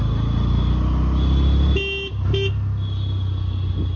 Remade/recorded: recorded